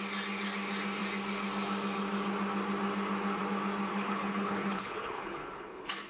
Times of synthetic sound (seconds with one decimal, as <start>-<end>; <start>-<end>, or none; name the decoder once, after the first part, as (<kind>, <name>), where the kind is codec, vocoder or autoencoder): 3.9-6.1 (codec, HILCodec)